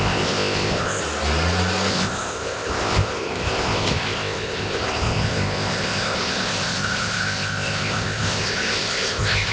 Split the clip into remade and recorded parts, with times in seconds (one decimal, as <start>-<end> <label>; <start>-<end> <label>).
0.0-1.0 remade; 1.0-1.9 recorded; 1.9-9.5 remade